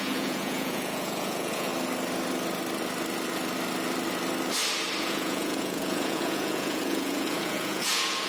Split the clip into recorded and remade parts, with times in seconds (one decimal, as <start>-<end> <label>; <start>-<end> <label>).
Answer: 0.0-1.7 remade; 1.7-5.0 recorded; 5.0-8.3 remade

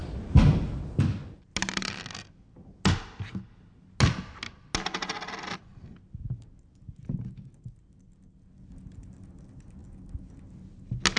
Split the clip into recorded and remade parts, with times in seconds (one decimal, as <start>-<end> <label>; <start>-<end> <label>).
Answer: 0.0-11.2 recorded

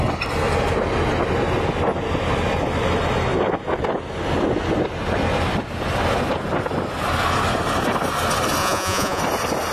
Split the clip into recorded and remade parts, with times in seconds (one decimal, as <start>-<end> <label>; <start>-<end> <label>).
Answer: 0.0-8.6 recorded; 8.6-9.2 remade; 9.2-9.7 recorded

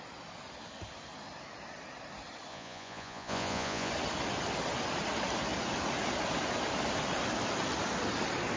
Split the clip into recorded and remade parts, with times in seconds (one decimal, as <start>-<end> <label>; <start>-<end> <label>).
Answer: 0.0-2.5 recorded; 2.5-3.9 remade; 3.9-8.6 recorded

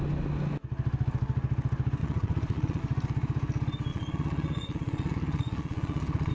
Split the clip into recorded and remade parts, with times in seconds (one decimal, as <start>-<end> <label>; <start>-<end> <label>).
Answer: 0.0-2.0 recorded; 2.0-2.8 remade; 2.8-3.9 recorded; 3.9-6.3 remade